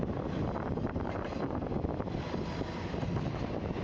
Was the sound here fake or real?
real